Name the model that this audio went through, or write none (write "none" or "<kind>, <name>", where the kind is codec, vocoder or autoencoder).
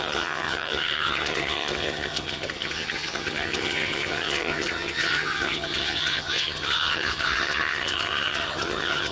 vocoder, HiFi-GAN